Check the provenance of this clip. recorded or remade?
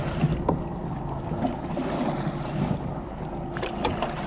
recorded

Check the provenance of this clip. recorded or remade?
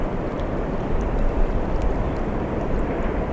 remade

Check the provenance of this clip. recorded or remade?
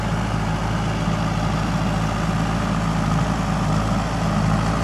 recorded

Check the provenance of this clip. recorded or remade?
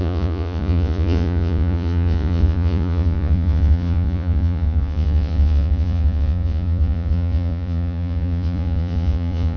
remade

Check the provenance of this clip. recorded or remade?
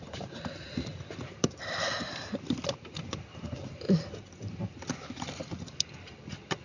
remade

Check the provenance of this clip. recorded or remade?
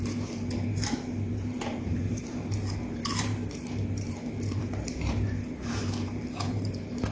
remade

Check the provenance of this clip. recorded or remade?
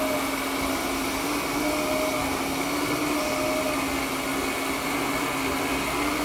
recorded